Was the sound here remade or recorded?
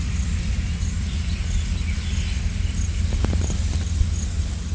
recorded